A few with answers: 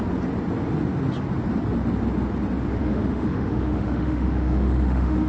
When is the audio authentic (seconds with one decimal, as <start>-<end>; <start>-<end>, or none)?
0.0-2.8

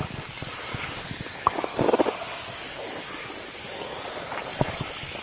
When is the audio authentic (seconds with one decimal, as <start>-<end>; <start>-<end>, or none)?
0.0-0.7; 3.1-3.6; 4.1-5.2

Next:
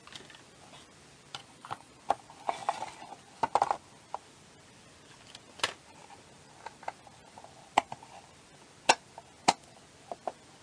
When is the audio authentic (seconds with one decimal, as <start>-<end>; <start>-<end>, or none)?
0.0-1.4; 2.0-10.6

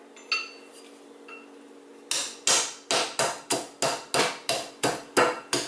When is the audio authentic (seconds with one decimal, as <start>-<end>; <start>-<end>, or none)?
0.0-5.7